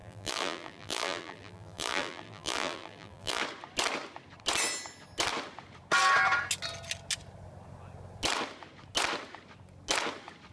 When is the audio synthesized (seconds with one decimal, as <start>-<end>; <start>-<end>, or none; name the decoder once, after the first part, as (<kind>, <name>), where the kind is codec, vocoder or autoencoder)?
0.0-3.4 (vocoder, BigVGAN v2)